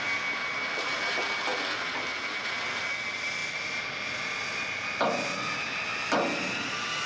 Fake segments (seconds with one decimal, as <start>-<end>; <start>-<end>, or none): none